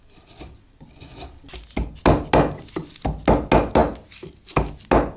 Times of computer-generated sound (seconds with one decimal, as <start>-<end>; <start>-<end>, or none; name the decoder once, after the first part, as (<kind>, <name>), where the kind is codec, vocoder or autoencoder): none